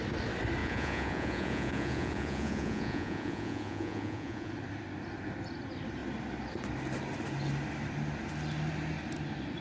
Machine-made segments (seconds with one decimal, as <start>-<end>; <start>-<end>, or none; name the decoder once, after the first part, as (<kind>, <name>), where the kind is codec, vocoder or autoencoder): 0.6-4.5 (vocoder, Vocos)